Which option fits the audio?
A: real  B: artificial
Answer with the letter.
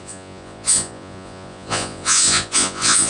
B